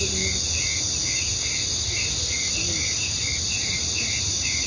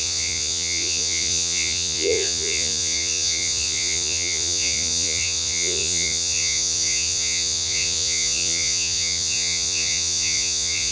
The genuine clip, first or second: first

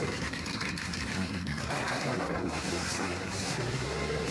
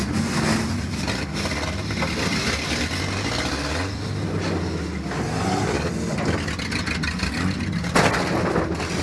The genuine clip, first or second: second